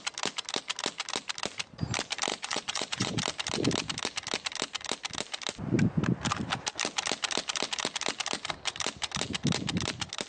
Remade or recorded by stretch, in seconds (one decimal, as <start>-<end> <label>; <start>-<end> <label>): 0.0-2.3 recorded; 2.3-3.2 remade; 3.2-10.3 recorded